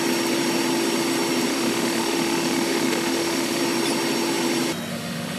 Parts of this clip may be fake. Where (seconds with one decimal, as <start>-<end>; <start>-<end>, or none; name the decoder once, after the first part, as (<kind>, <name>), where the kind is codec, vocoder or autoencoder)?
1.5-3.6 (autoencoder, DAC-VAE); 4.9-5.4